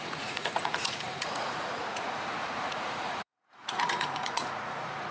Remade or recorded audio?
remade